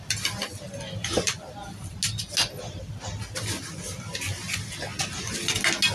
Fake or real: real